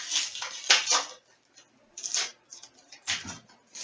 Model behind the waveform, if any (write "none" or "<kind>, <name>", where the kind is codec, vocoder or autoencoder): none